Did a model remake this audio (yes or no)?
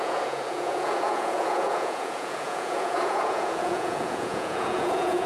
yes